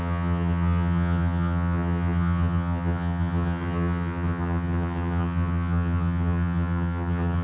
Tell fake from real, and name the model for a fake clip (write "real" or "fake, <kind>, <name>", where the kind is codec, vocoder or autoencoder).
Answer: fake, vocoder, HiFi-GAN